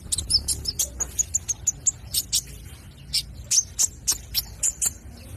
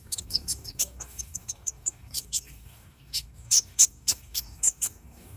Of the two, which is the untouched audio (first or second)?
first